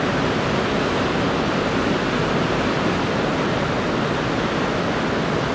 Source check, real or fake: real